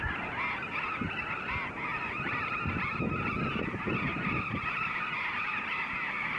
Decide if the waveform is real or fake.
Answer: real